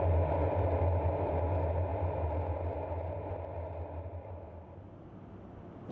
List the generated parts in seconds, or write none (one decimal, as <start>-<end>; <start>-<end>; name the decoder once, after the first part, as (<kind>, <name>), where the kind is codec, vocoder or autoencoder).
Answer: none